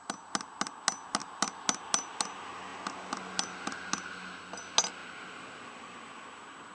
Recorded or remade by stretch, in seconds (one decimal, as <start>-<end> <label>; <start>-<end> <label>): 0.0-6.7 recorded